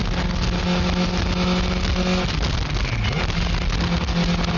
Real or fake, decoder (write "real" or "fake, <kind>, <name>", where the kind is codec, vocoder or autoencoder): real